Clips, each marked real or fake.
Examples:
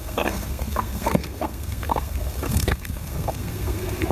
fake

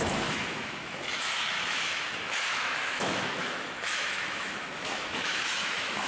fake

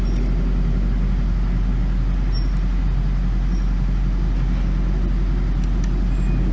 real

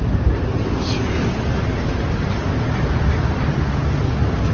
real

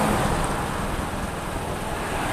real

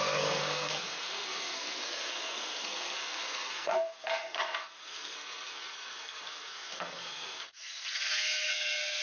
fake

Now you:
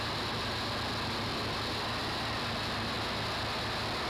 real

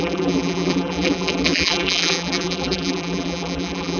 fake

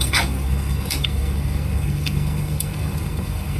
fake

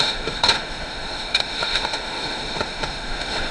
fake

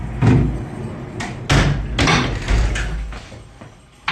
real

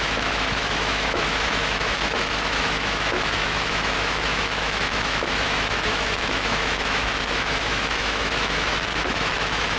fake